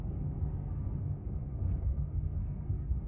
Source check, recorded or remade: remade